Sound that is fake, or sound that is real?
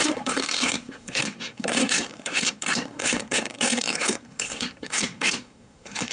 fake